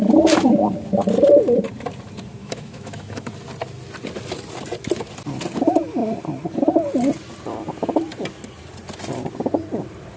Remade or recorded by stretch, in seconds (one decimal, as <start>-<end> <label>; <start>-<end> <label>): 0.0-2.4 recorded; 2.4-3.3 remade; 3.3-10.2 recorded